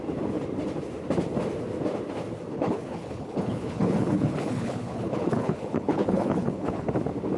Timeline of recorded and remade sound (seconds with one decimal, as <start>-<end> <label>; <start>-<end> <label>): 0.0-2.5 recorded; 2.5-6.9 remade; 6.9-7.4 recorded